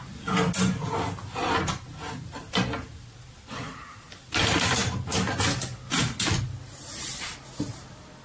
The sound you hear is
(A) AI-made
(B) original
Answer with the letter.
B